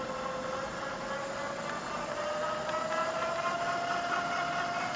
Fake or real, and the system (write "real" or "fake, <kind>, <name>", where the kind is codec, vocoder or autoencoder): real